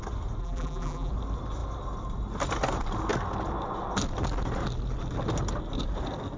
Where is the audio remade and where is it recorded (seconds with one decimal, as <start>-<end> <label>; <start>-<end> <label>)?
0.0-0.4 recorded; 0.4-1.1 remade; 1.1-6.4 recorded